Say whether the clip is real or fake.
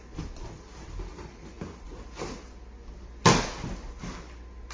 real